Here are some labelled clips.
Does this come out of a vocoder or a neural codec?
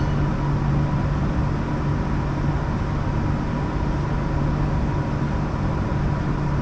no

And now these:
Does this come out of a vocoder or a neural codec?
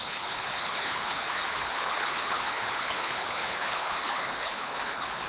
yes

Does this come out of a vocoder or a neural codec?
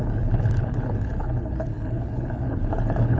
yes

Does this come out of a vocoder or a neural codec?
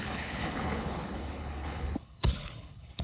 yes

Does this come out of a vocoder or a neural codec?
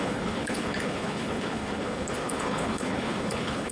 yes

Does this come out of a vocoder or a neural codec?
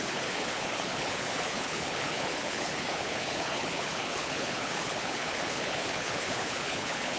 yes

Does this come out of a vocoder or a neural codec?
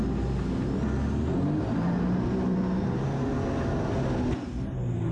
no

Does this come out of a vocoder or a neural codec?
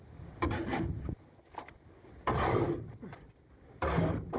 no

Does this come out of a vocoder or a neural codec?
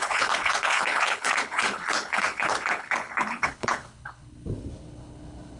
yes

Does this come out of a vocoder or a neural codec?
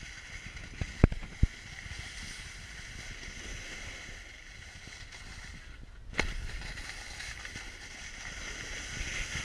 no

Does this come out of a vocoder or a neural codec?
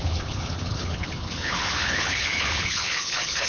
yes